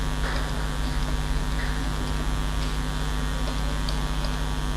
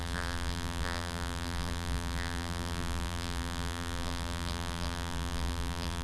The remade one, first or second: second